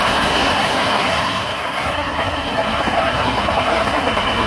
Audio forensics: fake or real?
fake